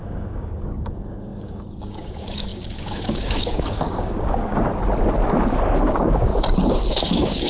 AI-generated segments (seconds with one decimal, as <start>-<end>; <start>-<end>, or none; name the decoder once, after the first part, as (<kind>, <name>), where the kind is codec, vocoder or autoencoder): 0.0-4.7 (codec, DAC); 5.8-6.3; 6.9-7.5